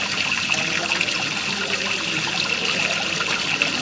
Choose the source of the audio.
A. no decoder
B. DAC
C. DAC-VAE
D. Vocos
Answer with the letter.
A